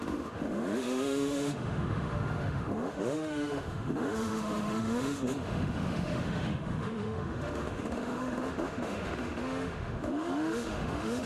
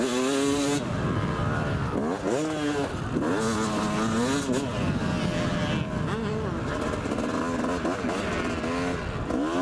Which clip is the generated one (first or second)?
first